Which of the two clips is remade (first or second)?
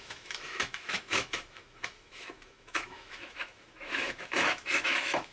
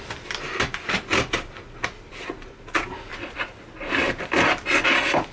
first